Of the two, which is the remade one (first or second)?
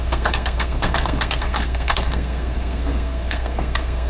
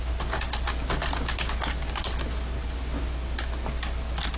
first